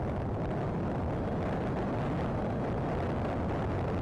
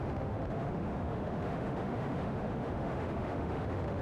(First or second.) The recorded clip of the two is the first